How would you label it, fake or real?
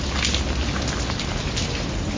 real